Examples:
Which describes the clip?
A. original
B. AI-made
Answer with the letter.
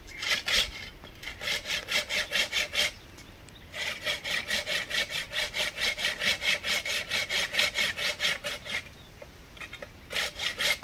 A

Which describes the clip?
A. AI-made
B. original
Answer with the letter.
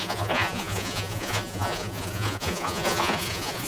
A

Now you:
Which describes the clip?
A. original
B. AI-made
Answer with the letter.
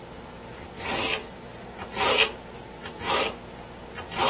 A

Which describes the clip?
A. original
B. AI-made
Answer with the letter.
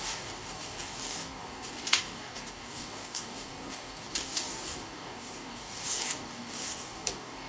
B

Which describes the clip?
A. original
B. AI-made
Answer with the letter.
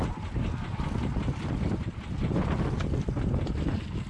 A